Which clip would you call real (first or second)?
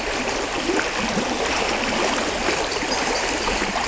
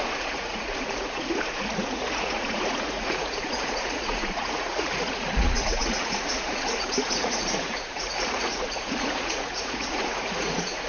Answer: first